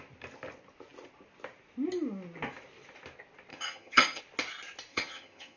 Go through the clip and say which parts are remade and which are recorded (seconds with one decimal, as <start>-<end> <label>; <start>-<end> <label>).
0.0-3.5 recorded; 3.5-4.2 remade; 4.2-4.9 recorded; 4.9-5.6 remade